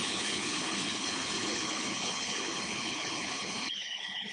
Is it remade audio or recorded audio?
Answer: remade